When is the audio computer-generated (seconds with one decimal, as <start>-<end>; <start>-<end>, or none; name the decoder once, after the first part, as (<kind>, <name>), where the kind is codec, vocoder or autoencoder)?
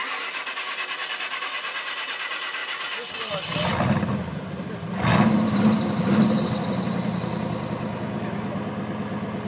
none